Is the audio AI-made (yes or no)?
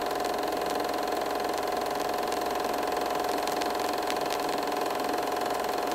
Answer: no